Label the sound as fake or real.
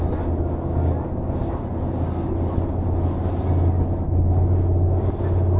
real